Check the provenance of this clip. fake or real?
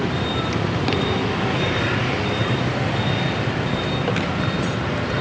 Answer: real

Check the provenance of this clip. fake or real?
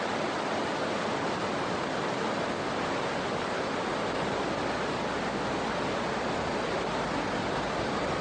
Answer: real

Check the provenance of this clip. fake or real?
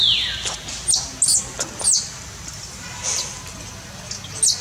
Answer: real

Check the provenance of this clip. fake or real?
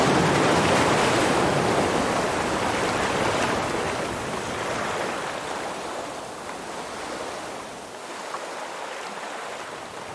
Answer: real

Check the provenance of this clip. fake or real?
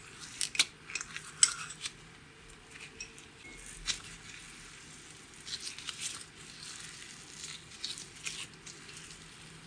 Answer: real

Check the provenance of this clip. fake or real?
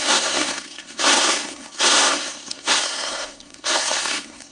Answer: fake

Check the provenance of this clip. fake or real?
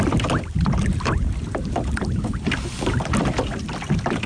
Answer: real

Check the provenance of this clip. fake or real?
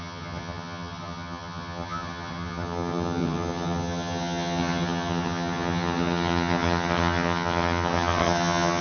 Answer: fake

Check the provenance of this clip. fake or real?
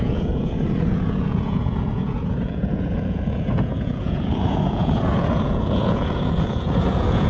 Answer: fake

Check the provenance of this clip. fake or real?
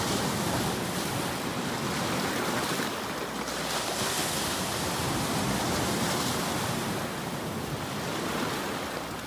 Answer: real